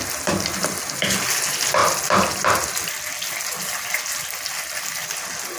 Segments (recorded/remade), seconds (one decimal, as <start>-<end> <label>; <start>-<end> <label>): 0.0-5.6 recorded